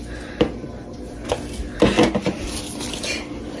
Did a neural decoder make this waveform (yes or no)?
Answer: no